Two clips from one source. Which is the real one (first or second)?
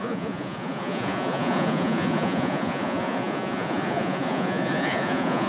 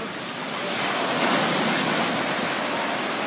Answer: second